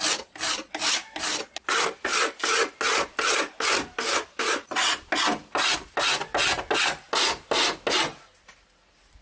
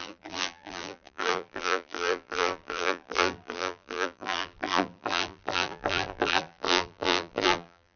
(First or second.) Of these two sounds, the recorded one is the first